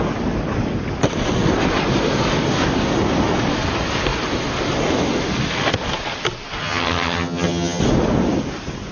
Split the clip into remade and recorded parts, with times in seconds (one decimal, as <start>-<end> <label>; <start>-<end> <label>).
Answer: 0.0-6.6 recorded; 6.6-7.8 remade; 7.8-8.9 recorded